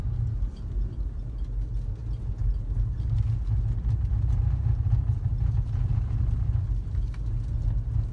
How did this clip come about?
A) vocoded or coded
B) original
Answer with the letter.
B